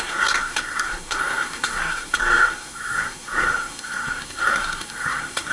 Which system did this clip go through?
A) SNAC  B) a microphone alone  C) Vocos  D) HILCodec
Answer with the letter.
A